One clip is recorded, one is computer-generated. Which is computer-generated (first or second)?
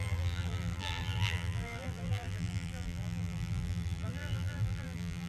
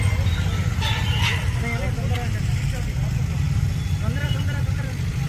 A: first